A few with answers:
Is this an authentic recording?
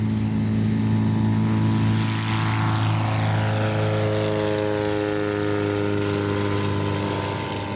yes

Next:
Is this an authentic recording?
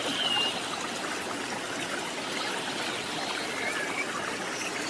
yes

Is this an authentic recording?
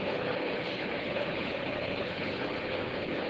no